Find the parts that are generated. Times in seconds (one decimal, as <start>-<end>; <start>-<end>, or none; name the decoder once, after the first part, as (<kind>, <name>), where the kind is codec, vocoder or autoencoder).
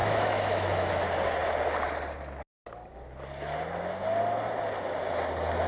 0.0-0.9 (autoencoder, DAC-VAE)